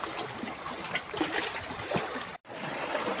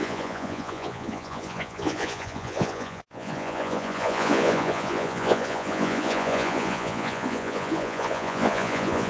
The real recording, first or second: first